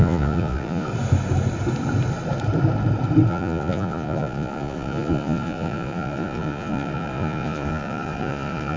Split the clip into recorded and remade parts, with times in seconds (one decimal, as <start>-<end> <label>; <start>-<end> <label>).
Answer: 0.0-0.9 remade; 0.9-3.3 recorded; 3.3-8.8 remade